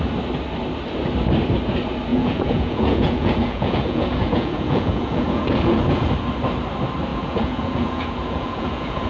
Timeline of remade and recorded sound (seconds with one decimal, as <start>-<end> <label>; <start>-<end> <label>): 0.0-2.1 recorded; 2.1-6.1 remade; 6.1-7.1 recorded; 7.1-9.1 remade